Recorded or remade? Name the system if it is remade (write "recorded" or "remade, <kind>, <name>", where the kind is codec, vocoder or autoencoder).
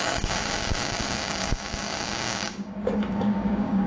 remade, codec, DAC